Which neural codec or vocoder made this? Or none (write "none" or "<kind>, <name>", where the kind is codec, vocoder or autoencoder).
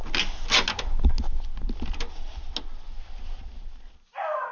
none